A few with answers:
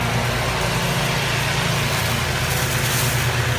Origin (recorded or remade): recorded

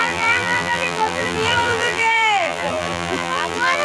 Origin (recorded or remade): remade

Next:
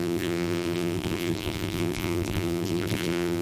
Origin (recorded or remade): remade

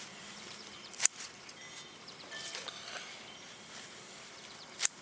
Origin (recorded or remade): remade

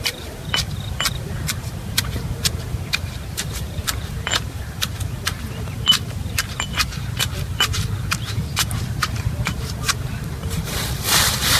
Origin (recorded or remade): remade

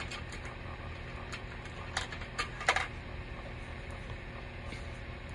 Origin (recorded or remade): recorded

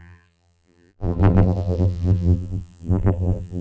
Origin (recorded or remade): remade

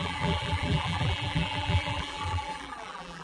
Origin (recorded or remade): remade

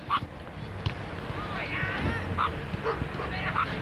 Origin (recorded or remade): recorded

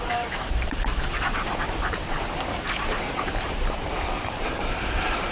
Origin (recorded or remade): remade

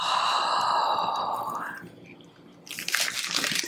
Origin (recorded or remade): recorded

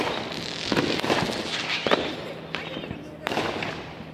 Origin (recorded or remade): remade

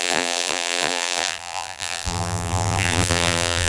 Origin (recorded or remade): remade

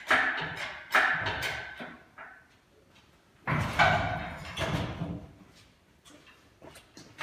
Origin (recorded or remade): recorded